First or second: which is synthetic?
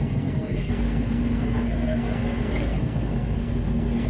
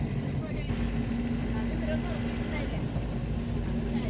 first